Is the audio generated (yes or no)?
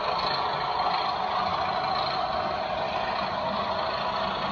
no